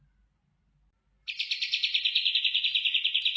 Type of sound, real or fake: real